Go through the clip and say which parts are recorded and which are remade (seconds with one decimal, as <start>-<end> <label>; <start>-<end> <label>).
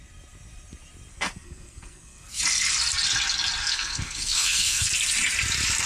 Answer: 0.0-1.1 recorded; 1.1-2.4 remade; 2.4-3.6 recorded; 3.6-4.9 remade; 4.9-5.9 recorded